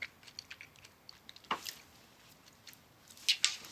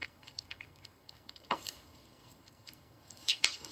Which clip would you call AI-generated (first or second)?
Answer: second